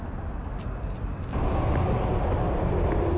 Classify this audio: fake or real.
real